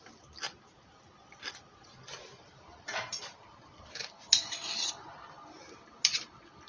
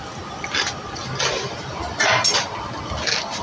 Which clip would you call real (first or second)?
second